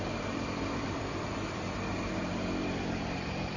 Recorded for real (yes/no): no